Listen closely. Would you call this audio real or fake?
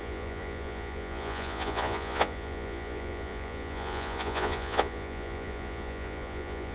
fake